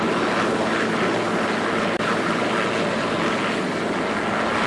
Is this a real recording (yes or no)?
yes